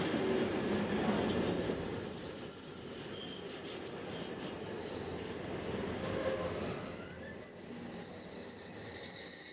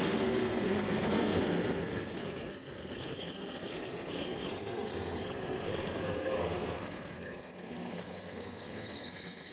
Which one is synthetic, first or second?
second